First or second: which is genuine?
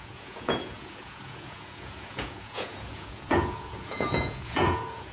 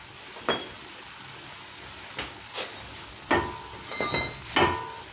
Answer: second